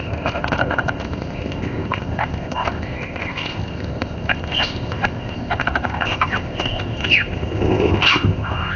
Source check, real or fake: fake